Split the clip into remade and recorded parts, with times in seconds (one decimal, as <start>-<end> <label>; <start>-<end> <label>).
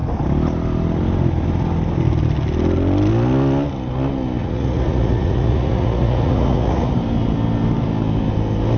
0.0-4.4 recorded; 4.4-6.9 remade; 6.9-8.8 recorded